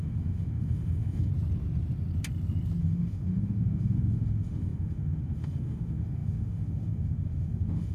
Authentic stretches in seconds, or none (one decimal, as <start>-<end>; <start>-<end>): 1.3-2.8

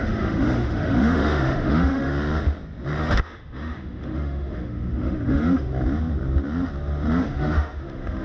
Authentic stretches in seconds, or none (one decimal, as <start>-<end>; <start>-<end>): 2.1-3.0; 5.7-7.2

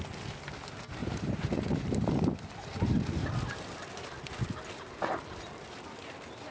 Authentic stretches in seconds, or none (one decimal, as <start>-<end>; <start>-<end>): 0.0-1.0; 2.1-6.5

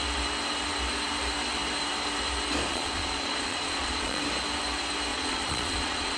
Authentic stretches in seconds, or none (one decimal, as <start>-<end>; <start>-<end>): 0.0-2.7; 4.2-5.1

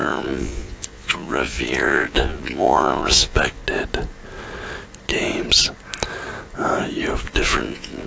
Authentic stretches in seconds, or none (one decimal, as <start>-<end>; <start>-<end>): 3.6-7.2